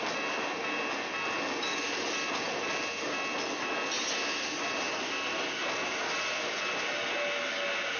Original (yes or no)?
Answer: yes